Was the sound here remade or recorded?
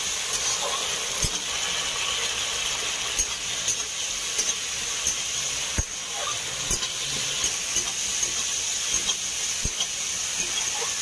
recorded